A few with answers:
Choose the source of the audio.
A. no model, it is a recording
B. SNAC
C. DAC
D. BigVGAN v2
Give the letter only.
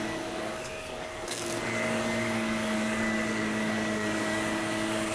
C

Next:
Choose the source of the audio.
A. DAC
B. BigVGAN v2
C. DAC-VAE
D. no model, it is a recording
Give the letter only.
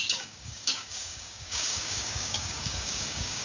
A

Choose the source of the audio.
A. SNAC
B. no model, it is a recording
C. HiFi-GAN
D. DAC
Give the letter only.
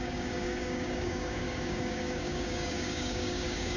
D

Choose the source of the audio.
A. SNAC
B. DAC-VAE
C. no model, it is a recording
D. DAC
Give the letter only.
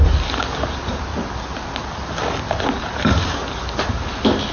C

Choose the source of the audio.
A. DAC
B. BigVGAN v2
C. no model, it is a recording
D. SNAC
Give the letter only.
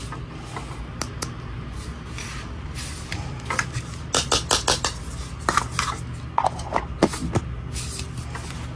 C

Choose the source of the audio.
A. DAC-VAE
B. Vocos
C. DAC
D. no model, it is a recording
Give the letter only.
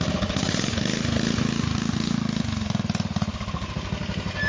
D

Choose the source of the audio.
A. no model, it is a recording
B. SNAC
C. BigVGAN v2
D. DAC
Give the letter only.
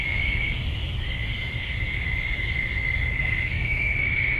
D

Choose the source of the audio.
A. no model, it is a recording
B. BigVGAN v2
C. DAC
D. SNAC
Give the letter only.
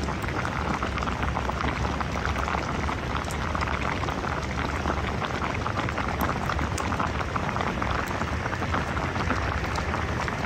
A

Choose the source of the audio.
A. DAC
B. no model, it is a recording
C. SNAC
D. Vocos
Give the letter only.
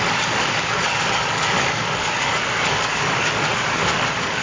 A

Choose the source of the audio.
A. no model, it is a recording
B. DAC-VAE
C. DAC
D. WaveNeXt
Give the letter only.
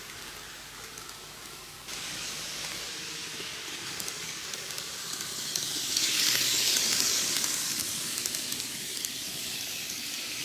C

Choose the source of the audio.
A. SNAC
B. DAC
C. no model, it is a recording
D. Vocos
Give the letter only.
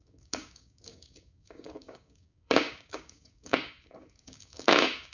B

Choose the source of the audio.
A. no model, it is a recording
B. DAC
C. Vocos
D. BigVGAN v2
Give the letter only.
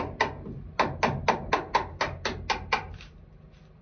A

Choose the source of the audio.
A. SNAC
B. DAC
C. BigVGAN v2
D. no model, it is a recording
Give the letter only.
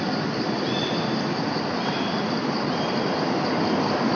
D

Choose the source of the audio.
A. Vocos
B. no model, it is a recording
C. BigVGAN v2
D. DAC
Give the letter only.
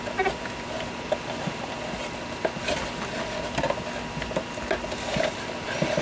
B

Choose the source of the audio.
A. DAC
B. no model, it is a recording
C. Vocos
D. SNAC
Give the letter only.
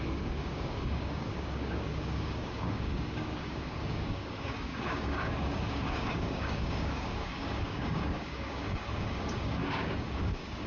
A